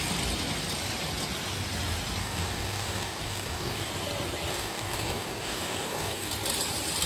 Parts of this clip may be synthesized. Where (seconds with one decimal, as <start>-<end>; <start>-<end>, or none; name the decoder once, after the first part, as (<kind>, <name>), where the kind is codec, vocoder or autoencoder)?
2.2-3.9 (codec, DAC); 4.5-6.3